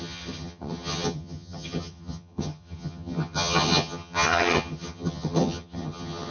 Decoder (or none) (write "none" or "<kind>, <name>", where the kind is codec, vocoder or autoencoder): vocoder, HiFi-GAN